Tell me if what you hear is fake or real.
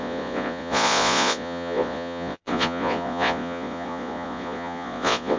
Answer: fake